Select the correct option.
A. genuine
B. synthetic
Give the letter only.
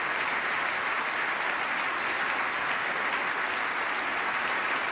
A